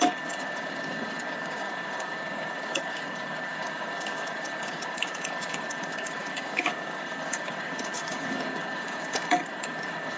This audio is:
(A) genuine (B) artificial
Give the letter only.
B